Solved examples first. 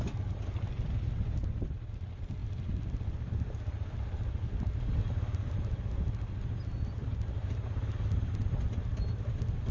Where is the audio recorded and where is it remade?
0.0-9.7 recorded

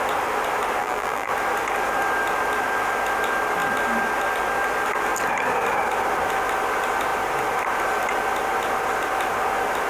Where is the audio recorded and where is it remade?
0.0-0.8 recorded; 0.8-1.3 remade; 1.3-9.9 recorded

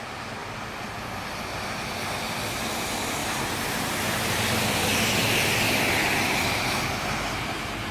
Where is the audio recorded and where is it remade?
0.0-7.9 recorded

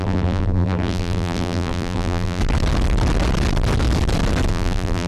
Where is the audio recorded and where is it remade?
0.0-2.4 remade; 2.4-4.5 recorded; 4.5-5.1 remade

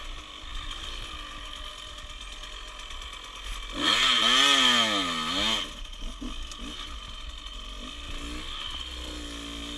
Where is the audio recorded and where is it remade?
0.0-0.5 recorded; 0.5-1.7 remade; 1.7-9.8 recorded

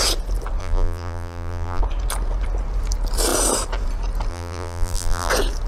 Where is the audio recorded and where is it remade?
0.0-0.6 recorded; 0.6-1.8 remade; 1.8-4.3 recorded; 4.3-5.3 remade; 5.3-5.7 recorded

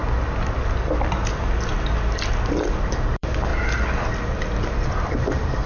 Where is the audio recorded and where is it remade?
0.0-2.8 recorded; 2.8-3.5 remade; 3.5-4.9 recorded; 4.9-5.7 remade

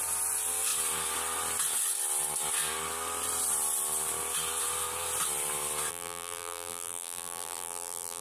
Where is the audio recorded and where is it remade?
0.0-5.9 recorded; 5.9-8.2 remade